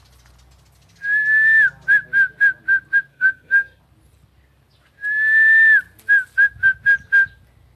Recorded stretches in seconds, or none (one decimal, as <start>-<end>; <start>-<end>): 0.0-3.1; 3.8-7.8